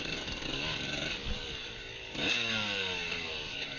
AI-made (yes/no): yes